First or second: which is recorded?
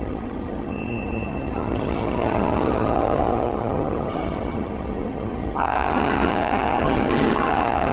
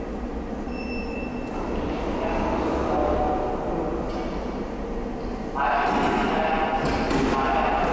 second